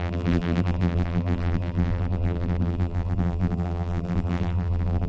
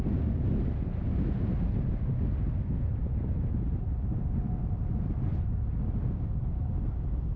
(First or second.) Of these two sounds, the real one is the second